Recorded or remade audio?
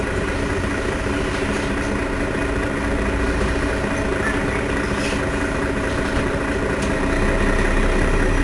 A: recorded